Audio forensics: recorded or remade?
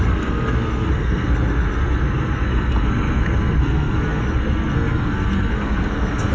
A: remade